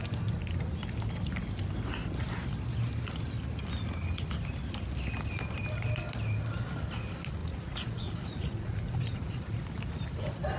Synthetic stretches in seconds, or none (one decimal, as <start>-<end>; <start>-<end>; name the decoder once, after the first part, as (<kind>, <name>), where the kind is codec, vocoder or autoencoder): 7.4-9.6 (vocoder, Vocos)